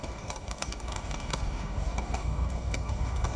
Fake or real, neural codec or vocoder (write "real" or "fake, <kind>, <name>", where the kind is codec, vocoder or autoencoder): fake, codec, DAC